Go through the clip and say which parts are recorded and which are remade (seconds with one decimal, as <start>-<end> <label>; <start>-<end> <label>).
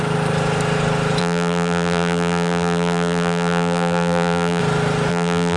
0.0-1.2 recorded; 1.2-4.6 remade; 4.6-5.1 recorded; 5.1-5.6 remade